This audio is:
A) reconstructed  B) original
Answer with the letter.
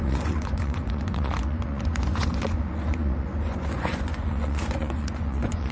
A